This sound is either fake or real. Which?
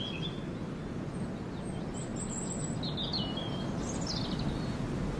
real